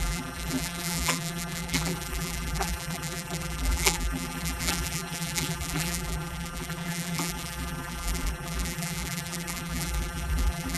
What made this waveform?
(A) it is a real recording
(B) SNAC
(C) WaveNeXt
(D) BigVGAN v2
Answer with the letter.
D